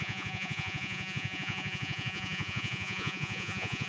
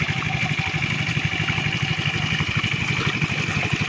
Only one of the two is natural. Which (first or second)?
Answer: second